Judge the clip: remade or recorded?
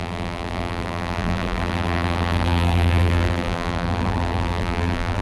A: remade